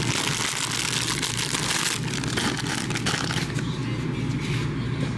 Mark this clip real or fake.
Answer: real